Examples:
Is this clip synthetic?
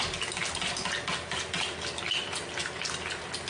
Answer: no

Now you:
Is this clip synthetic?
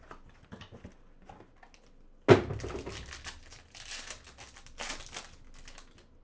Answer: no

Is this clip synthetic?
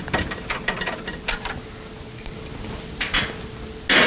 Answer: no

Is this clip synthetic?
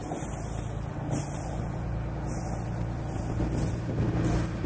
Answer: no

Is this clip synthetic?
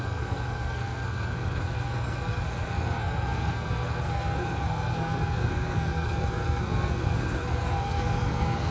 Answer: yes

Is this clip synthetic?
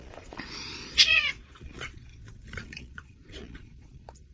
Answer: yes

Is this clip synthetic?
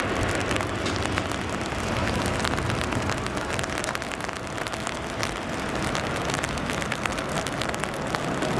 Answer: no